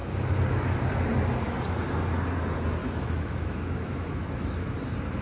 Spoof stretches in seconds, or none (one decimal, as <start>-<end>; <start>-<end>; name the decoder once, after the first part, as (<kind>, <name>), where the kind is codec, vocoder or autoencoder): 2.8-4.7 (autoencoder, DAC-VAE)